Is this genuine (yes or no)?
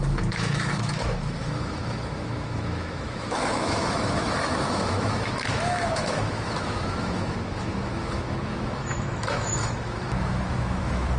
no